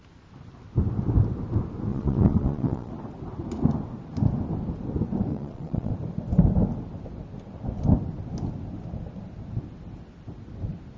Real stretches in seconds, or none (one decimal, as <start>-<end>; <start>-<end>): 0.0-1.9; 2.9-5.3; 5.9-11.0